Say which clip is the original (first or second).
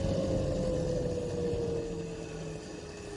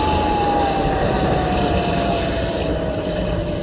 first